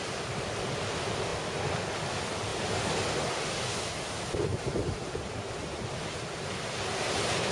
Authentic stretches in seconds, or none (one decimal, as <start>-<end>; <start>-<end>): 0.0-7.5